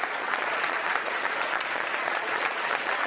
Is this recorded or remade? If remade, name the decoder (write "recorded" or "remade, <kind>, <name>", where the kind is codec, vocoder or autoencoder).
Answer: remade, vocoder, Vocos